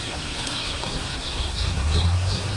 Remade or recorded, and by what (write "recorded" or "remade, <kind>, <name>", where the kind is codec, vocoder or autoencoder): remade, codec, SNAC